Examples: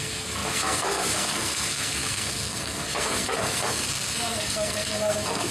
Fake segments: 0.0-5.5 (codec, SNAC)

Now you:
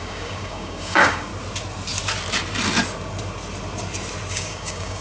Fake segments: 0.0-1.3 (codec, DAC); 4.3-5.0

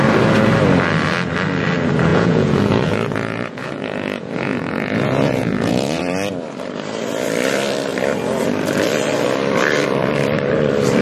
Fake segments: 2.1-6.0 (vocoder, Vocos)

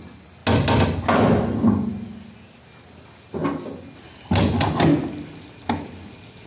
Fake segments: none